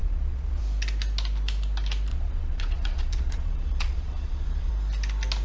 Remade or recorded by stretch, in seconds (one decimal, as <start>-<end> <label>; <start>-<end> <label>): 0.0-0.6 remade; 0.6-2.1 recorded; 2.1-4.7 remade; 4.7-5.4 recorded